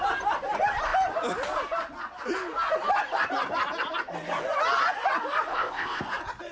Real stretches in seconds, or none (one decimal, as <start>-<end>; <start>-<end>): 0.0-5.5; 6.0-6.5